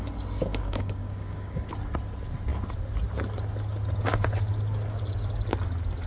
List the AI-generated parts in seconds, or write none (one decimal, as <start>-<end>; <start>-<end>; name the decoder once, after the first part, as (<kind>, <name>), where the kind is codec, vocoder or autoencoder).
0.5-1.7 (codec, DAC)